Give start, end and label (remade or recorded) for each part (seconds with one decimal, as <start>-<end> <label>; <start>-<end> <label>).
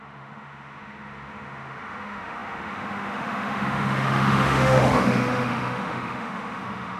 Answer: 0.0-7.0 remade